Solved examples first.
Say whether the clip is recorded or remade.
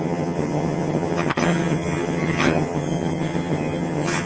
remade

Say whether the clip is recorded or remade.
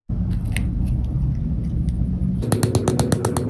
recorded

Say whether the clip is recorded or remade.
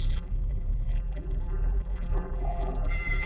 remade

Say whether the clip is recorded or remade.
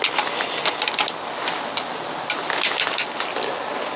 recorded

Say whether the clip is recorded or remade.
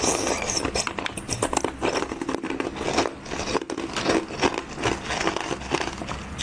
recorded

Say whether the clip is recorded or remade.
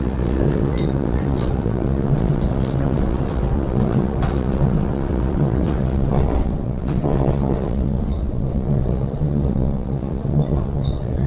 remade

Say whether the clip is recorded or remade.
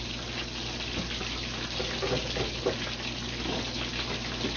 recorded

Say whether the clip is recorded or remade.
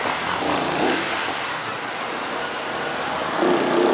recorded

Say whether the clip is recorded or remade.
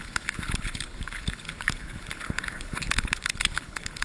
remade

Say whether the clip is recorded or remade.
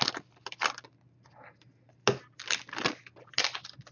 recorded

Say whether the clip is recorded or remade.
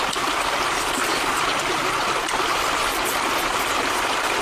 recorded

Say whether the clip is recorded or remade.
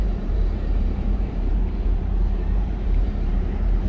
remade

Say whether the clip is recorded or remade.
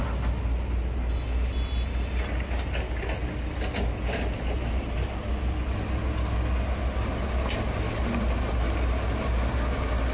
recorded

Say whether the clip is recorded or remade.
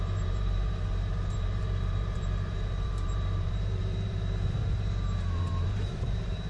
remade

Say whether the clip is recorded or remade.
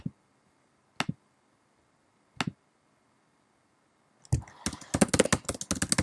recorded